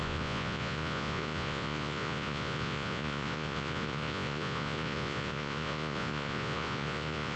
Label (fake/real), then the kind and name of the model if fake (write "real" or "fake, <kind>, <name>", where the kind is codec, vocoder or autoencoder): fake, vocoder, Vocos